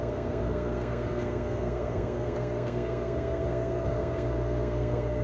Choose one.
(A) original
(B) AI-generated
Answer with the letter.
B